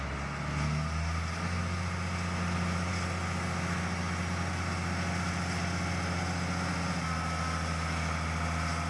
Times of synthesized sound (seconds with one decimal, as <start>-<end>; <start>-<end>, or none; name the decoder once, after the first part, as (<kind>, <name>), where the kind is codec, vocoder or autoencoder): none